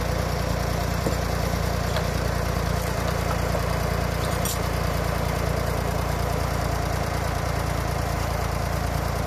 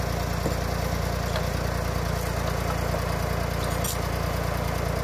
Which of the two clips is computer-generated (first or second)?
first